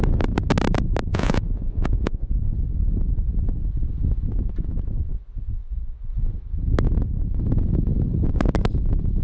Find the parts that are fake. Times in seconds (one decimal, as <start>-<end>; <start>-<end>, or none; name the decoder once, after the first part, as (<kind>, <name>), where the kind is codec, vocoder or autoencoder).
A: 1.1-2.3 (vocoder, Vocos)

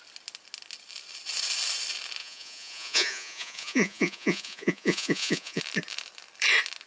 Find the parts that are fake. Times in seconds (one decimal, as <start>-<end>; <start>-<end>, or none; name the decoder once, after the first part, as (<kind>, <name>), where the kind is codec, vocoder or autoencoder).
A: 2.2-5.6 (vocoder, Vocos)

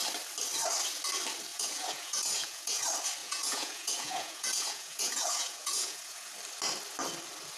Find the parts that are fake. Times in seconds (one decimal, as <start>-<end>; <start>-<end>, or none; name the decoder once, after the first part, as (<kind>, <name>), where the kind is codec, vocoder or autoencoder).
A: 1.5-2.8 (vocoder, Vocos); 3.2-6.3